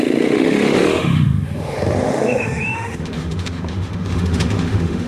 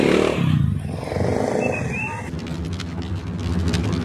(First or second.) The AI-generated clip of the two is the first